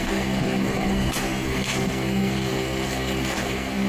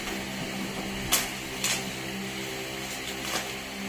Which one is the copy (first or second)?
first